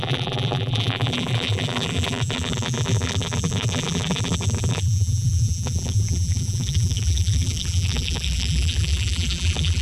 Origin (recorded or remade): remade